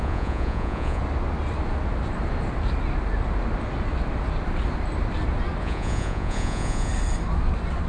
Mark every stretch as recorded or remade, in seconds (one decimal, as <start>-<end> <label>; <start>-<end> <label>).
0.0-1.0 remade; 1.0-5.6 recorded; 5.6-6.9 remade; 6.9-7.9 recorded